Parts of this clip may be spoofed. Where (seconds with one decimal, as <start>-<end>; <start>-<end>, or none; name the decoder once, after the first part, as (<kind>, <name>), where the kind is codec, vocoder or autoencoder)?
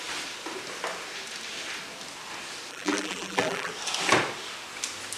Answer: 2.7-3.7 (vocoder, BigVGAN v2)